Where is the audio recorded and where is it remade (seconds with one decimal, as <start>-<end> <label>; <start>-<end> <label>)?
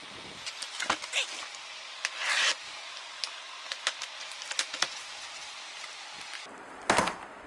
0.0-7.5 recorded